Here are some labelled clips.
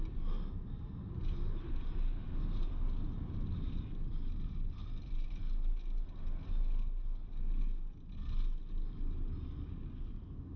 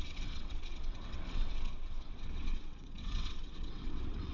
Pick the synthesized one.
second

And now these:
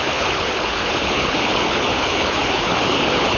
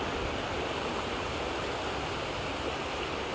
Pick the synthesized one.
first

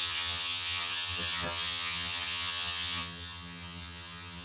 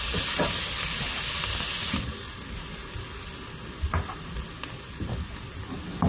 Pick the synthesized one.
first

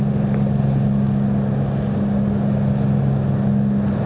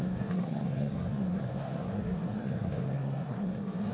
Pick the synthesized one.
second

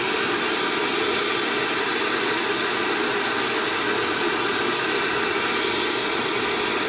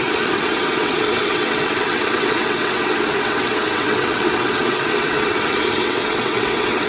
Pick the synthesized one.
second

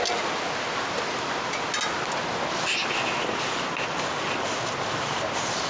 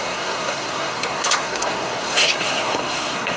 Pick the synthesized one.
second